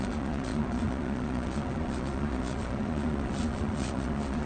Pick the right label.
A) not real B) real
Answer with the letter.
A